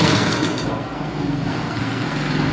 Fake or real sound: fake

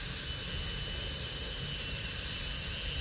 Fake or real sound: real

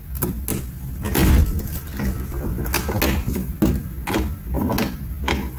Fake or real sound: real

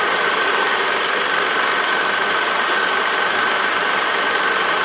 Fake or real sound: real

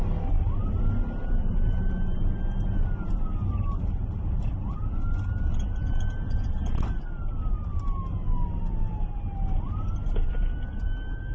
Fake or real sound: real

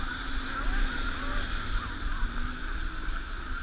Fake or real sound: real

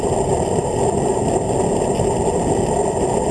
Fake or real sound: real